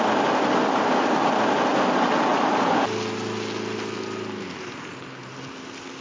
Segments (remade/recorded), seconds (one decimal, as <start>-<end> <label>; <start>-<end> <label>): 0.0-6.0 recorded